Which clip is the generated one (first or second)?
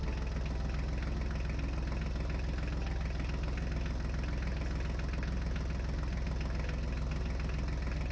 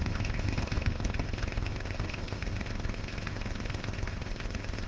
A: second